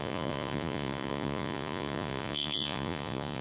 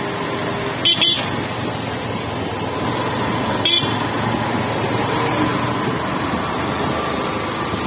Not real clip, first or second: first